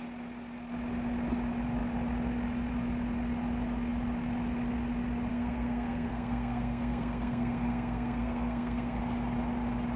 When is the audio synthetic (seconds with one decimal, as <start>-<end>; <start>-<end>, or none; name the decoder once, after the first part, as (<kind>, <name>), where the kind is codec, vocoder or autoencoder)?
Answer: 5.3-9.0 (codec, SNAC)